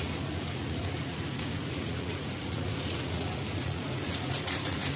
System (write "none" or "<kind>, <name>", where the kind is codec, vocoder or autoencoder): vocoder, Vocos